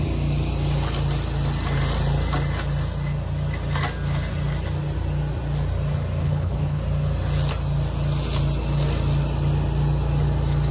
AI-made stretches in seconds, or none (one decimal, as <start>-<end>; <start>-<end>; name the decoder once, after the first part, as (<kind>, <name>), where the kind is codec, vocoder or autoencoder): 6.2-6.8 (codec, HILCodec)